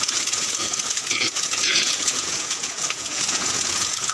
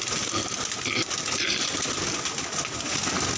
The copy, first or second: first